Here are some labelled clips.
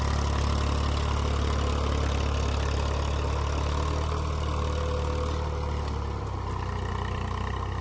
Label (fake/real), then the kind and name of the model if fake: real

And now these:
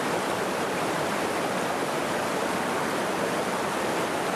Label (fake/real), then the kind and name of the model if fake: real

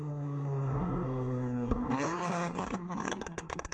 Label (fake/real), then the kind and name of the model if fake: fake, codec, SNAC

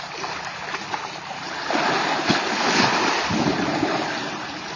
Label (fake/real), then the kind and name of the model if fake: real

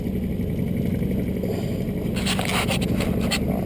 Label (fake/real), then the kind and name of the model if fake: real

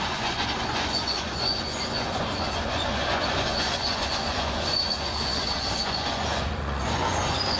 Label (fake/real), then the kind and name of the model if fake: fake, vocoder, Vocos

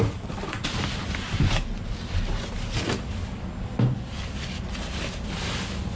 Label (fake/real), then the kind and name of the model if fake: real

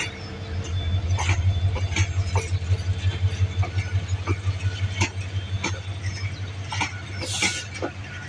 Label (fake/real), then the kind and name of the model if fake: real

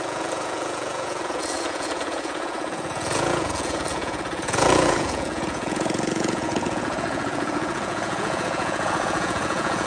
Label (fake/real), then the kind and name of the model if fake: fake, vocoder, Vocos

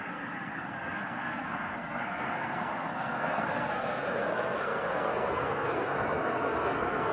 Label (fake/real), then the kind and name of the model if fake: fake, codec, SNAC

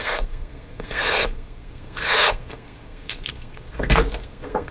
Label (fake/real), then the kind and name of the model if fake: fake, codec, SNAC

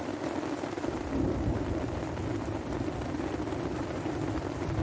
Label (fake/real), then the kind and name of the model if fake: fake, vocoder, BigVGAN v2